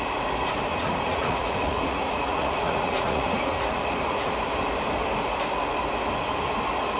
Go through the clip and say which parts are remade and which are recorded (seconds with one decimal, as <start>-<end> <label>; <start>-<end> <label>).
0.0-0.7 recorded; 0.7-4.3 remade; 4.3-7.0 recorded